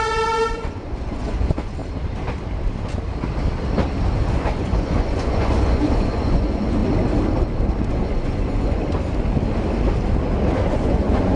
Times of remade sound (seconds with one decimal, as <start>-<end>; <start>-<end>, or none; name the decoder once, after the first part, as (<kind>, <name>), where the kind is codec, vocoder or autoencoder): 0.0-1.8 (vocoder, Vocos); 4.3-6.8; 7.9-8.8; 10.7-11.4